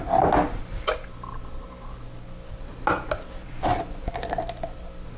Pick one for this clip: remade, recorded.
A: recorded